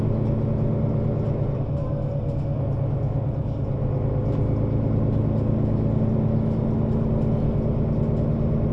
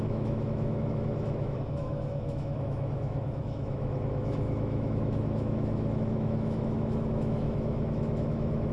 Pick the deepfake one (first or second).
second